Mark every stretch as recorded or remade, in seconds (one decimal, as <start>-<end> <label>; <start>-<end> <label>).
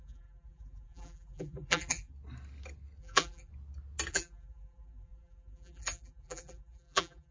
0.0-2.1 remade; 2.1-3.0 recorded; 3.0-3.5 remade; 3.5-4.1 recorded; 4.1-7.3 remade